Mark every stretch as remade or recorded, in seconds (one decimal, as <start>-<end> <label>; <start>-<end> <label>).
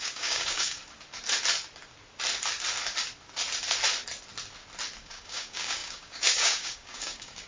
0.0-0.8 remade; 0.8-5.0 recorded; 5.0-7.5 remade